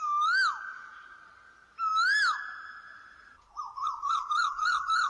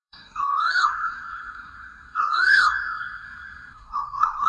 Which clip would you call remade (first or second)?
second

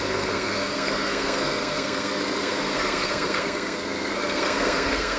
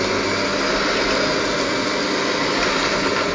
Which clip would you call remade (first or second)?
first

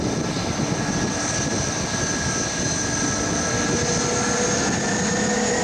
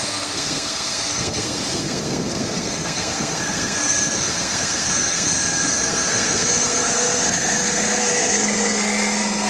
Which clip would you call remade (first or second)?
second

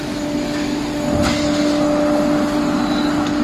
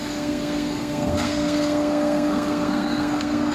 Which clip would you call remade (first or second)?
second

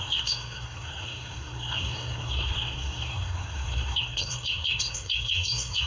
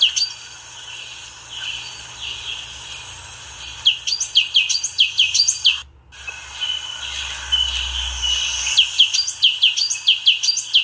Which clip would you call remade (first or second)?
first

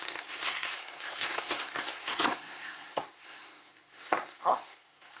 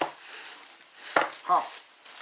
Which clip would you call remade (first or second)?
first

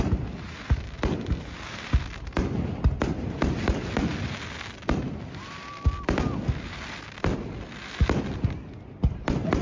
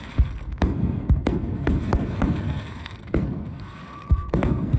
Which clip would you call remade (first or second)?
second